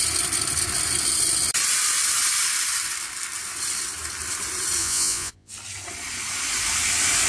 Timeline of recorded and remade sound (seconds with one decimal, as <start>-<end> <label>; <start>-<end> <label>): 0.0-4.8 recorded; 4.8-5.5 remade; 5.5-7.3 recorded